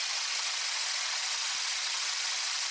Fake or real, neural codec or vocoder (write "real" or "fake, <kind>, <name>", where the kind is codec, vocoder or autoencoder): real